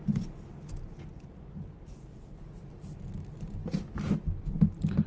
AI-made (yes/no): no